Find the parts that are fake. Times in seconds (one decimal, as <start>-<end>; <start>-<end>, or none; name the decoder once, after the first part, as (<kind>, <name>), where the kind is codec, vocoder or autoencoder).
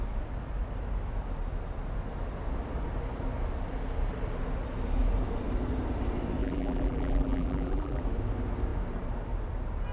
6.4-8.0 (vocoder, BigVGAN v2)